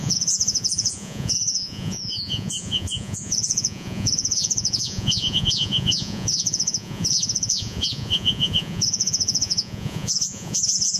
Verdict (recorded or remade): remade